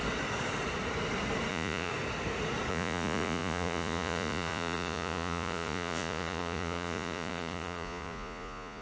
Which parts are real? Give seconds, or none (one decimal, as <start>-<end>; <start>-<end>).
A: 0.0-1.5; 1.9-2.7